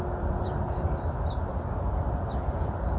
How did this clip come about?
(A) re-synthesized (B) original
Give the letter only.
A